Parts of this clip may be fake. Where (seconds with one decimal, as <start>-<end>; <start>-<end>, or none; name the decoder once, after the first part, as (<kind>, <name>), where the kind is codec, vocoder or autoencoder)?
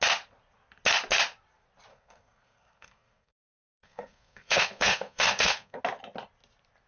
1.9-5.8 (codec, SNAC)